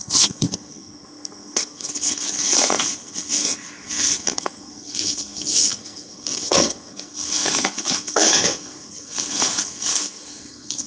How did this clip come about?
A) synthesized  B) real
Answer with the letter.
A